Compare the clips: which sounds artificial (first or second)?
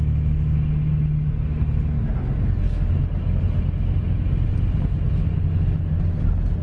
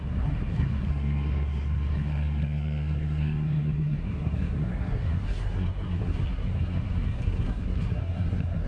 second